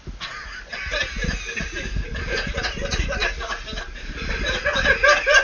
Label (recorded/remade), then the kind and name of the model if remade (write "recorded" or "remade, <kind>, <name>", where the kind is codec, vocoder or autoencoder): recorded